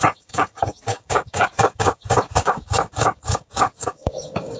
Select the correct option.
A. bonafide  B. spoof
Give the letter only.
B